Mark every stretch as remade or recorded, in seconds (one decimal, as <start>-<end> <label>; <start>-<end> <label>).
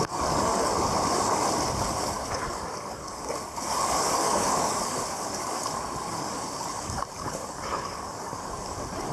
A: 0.0-0.5 remade; 0.5-1.9 recorded; 1.9-9.1 remade